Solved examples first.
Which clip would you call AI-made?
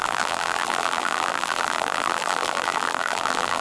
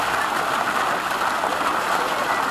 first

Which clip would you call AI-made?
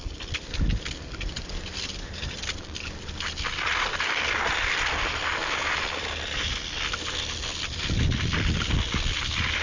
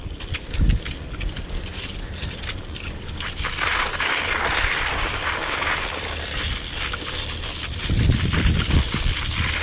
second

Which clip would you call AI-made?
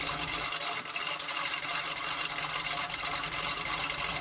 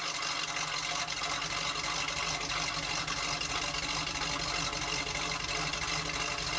first